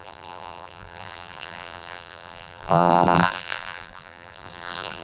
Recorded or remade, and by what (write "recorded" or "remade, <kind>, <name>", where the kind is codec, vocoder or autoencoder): remade, vocoder, BigVGAN v2